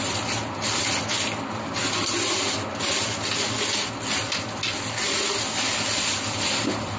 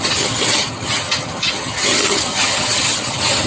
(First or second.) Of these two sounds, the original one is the first